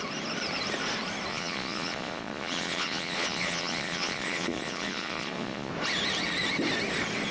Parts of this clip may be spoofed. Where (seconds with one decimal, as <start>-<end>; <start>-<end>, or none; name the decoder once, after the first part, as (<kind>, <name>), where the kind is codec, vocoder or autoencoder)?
1.3-5.7 (vocoder, Vocos)